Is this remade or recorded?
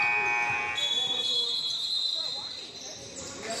recorded